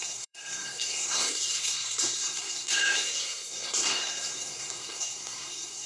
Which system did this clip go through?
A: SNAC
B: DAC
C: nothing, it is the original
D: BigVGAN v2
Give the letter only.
A